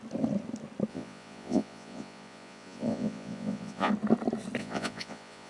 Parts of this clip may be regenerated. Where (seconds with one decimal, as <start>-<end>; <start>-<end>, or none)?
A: 0.9-3.9; 4.6-5.5